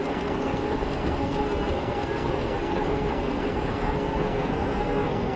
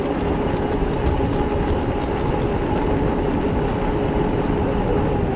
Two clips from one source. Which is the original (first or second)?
second